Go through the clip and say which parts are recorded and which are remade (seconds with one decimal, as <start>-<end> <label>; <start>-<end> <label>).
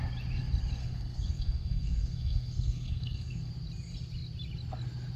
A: 0.0-0.8 recorded; 0.8-3.5 remade; 3.5-5.2 recorded